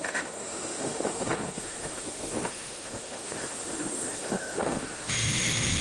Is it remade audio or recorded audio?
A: remade